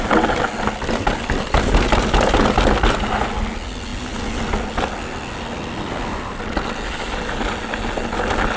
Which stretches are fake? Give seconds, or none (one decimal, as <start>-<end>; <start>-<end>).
none